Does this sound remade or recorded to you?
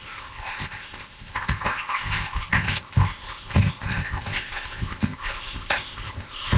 remade